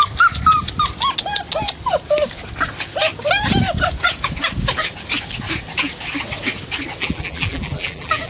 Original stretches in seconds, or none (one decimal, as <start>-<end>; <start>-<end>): 0.0-7.0